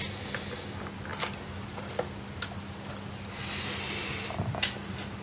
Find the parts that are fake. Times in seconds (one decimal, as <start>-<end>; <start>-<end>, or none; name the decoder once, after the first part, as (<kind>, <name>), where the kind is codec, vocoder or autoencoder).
none